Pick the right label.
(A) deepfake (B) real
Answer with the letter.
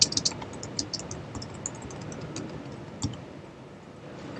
B